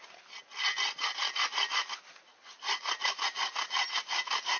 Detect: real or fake real